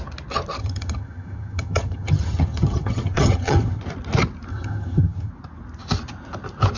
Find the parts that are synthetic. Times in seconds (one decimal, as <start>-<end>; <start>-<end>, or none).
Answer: 0.6-3.8; 4.5-5.3

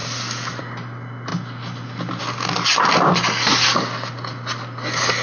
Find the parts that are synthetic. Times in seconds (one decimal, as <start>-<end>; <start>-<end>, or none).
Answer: none

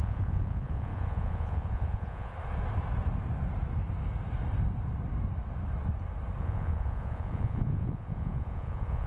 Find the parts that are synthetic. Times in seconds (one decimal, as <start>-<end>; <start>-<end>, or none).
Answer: 0.0-2.3; 6.4-9.1

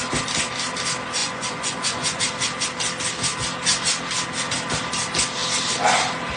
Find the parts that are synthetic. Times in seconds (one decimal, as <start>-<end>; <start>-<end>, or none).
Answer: 1.2-2.2

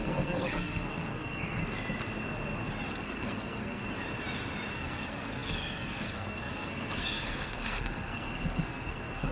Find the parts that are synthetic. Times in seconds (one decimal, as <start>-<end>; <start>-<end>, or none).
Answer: 0.0-1.6; 2.9-3.8; 4.7-9.3